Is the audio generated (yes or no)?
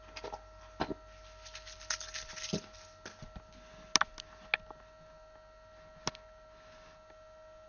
no